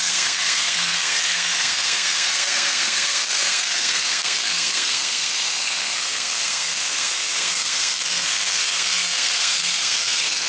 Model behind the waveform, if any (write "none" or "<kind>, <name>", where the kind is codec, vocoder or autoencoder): codec, SNAC